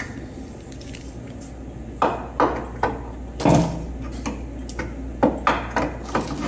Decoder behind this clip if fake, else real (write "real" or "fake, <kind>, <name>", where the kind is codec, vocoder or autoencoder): real